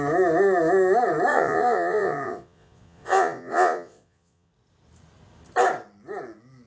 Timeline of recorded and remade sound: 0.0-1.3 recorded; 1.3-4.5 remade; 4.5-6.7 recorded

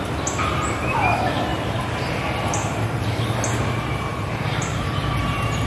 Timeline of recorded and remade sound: 0.0-1.5 recorded; 1.5-2.1 remade; 2.1-2.6 recorded; 2.6-3.2 remade; 3.2-4.1 recorded; 4.1-5.7 remade

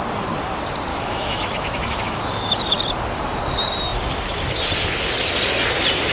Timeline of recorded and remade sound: 0.0-0.9 recorded; 0.9-2.3 remade; 2.3-6.1 recorded

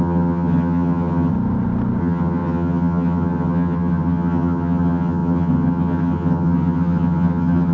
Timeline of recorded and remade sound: 0.0-1.3 remade; 1.3-2.0 recorded; 2.0-7.7 remade